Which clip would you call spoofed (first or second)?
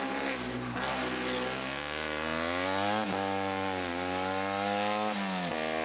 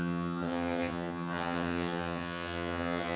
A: second